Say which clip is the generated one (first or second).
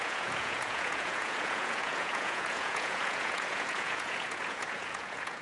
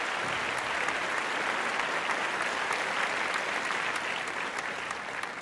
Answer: first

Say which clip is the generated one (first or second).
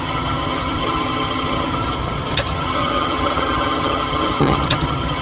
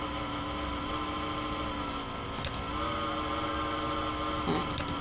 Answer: first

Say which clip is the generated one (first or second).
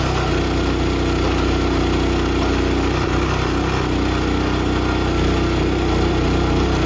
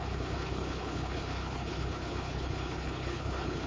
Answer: second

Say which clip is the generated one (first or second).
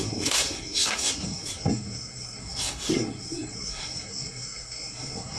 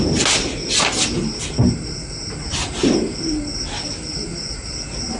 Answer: first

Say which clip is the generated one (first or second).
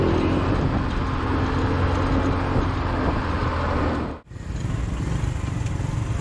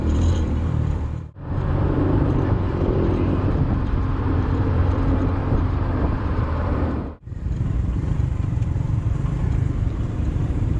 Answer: second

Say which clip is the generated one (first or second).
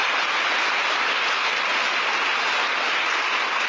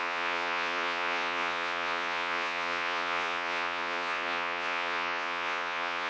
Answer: second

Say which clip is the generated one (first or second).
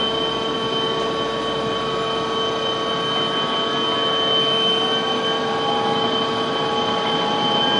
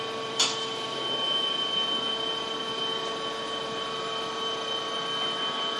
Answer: second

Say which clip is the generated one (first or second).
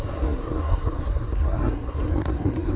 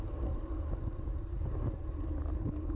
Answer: first